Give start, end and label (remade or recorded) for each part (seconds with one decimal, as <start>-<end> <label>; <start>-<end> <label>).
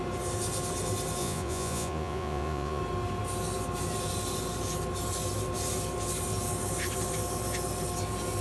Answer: 0.0-1.2 recorded; 1.2-2.8 remade; 2.8-8.4 recorded